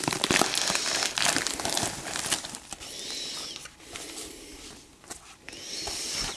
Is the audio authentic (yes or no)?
no